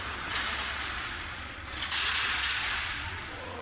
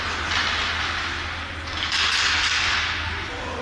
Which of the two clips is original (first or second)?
second